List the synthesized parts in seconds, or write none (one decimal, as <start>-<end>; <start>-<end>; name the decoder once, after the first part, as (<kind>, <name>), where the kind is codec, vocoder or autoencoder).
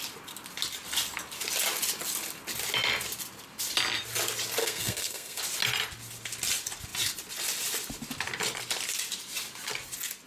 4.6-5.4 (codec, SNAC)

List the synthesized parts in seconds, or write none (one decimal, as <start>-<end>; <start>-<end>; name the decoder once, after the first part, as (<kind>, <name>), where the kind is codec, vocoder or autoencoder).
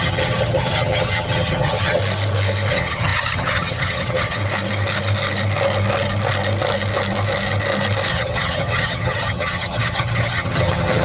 0.0-2.0 (vocoder, HiFi-GAN); 2.7-4.4; 8.1-11.0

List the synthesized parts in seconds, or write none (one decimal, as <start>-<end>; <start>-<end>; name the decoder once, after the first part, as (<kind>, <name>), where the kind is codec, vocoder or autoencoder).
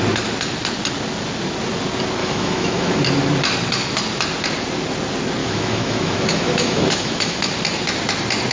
2.2-3.0 (autoencoder, DAC-VAE); 5.4-7.4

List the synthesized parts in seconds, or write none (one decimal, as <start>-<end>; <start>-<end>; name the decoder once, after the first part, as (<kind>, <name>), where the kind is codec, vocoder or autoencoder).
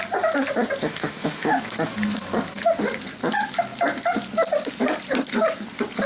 0.8-1.5 (autoencoder, DAC-VAE)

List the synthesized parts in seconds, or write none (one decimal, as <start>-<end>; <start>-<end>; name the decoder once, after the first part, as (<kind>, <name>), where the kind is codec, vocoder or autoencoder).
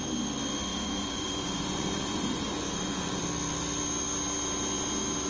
0.7-3.2 (vocoder, Vocos)